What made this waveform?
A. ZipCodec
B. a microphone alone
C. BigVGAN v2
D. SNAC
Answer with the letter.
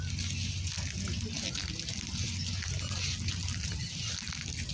B